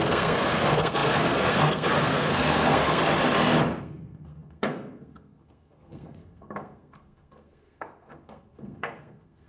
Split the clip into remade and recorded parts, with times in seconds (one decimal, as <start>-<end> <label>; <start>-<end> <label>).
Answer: 0.0-3.0 remade; 3.0-3.8 recorded; 3.8-9.5 remade